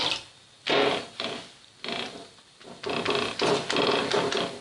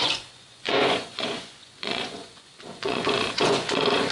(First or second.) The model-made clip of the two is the second